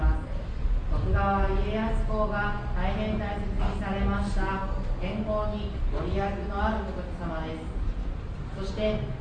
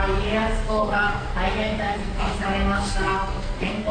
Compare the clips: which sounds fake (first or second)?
second